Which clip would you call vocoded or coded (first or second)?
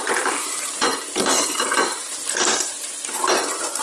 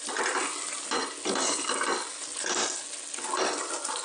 first